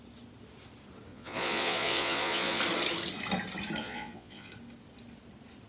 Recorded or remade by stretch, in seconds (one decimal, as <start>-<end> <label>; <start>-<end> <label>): 0.0-1.1 recorded; 1.1-2.6 remade; 2.6-3.8 recorded; 3.8-4.5 remade; 4.5-5.7 recorded